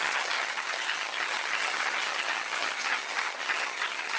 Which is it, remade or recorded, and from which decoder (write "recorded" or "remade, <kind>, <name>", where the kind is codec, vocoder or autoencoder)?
remade, vocoder, HiFi-GAN